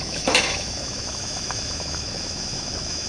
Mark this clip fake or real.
fake